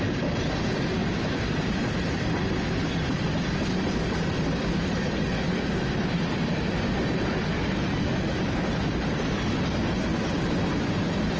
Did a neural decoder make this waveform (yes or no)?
no